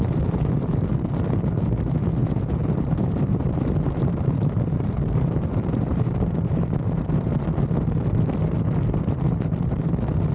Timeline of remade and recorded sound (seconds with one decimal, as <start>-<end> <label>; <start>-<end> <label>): 0.0-2.2 recorded; 2.2-7.1 remade; 7.1-10.3 recorded